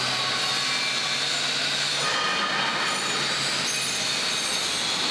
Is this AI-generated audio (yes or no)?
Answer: no